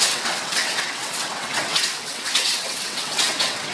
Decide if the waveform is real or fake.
fake